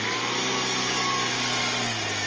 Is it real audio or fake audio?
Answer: real